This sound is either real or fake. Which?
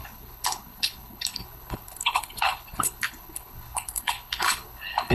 fake